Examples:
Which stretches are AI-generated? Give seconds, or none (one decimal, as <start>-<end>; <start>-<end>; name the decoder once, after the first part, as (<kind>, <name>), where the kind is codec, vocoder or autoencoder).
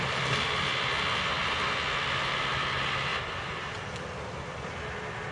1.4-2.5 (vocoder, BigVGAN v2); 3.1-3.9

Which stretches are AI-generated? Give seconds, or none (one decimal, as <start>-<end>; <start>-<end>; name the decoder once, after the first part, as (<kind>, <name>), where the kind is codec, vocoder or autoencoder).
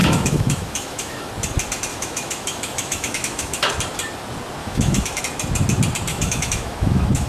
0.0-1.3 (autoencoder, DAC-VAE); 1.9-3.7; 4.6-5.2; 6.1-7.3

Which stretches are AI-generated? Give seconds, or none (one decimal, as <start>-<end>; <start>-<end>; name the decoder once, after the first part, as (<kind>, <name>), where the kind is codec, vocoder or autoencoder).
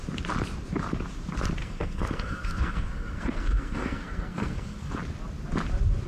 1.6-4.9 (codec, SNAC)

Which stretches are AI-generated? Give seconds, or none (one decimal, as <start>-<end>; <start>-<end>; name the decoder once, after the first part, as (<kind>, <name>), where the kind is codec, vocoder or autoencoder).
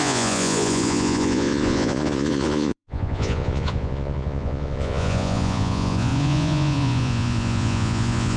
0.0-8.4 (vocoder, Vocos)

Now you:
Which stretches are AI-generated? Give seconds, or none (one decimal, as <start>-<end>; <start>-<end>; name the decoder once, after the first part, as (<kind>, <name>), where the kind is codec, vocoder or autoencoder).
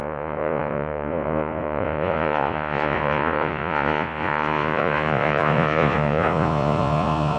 0.0-7.4 (vocoder, Vocos)